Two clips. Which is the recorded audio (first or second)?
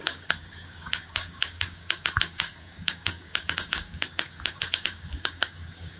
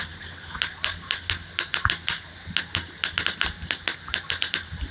second